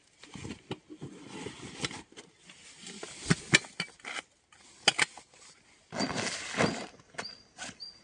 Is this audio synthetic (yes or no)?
no